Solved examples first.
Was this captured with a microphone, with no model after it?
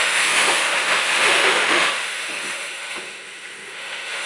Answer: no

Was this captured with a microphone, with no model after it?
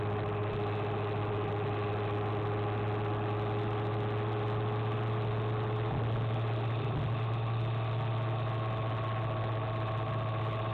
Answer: yes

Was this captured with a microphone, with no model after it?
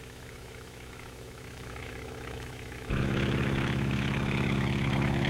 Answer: no